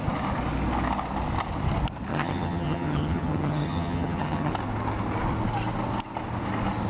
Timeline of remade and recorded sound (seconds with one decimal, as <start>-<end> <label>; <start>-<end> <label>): 0.0-2.1 recorded; 2.1-4.5 remade; 4.5-6.9 recorded